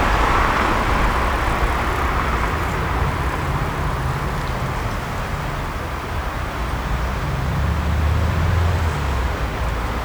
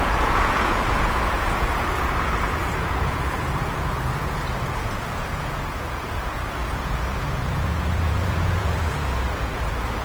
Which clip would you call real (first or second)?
first